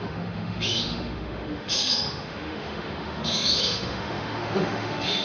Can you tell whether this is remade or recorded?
remade